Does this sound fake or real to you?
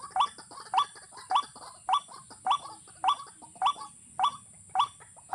real